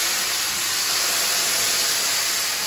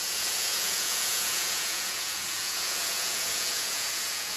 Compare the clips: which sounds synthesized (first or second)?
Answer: second